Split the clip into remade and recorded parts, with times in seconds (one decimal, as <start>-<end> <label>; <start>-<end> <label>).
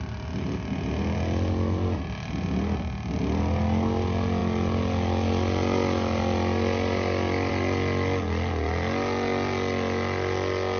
0.0-10.8 recorded